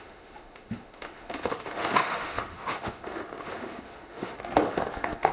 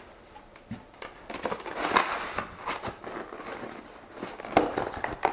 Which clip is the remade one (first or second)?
first